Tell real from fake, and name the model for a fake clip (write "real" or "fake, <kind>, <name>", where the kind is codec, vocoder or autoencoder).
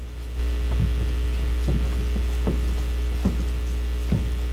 real